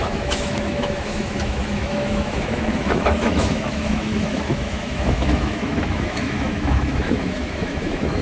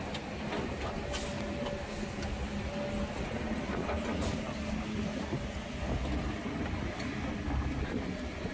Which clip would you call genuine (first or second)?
second